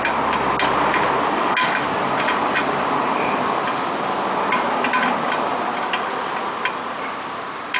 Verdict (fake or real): real